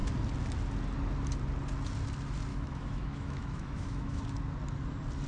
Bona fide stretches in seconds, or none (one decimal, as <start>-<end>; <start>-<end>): 0.0-2.5; 4.2-5.3

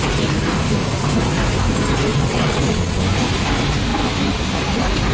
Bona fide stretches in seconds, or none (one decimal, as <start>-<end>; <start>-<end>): 0.0-2.1; 3.0-5.1

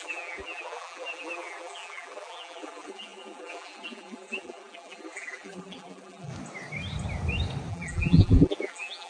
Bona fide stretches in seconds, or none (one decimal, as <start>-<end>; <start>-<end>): 6.3-7.7

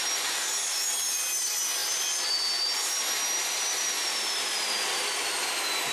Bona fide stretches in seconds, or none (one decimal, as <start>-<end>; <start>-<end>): 0.0-5.9

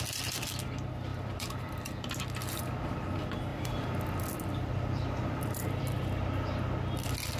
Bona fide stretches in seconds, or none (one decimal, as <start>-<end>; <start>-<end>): 0.0-1.1; 2.2-3.5; 6.0-7.4

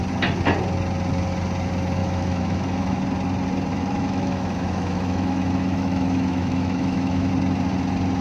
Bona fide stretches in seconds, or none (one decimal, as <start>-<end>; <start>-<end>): 0.0-2.0; 3.0-3.7; 7.3-8.2